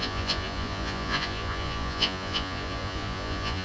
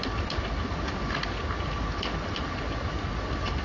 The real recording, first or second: second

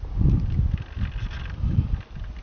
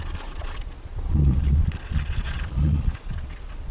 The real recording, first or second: first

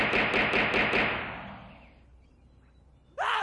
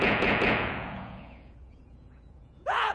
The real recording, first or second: first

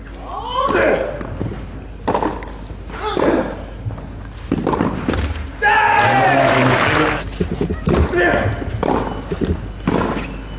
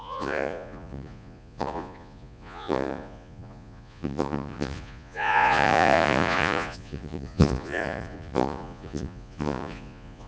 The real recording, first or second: first